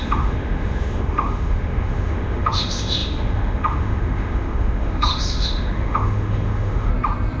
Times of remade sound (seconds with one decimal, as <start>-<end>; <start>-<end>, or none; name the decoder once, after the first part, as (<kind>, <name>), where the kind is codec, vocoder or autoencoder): 0.0-6.9 (autoencoder, DAC-VAE)